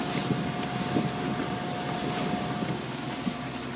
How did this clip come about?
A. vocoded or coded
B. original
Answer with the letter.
B